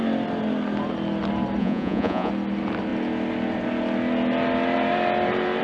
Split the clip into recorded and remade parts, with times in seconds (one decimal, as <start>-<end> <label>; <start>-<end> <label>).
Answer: 0.0-1.6 recorded; 1.6-2.3 remade; 2.3-5.6 recorded